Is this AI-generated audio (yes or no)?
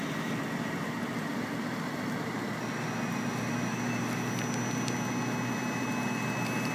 no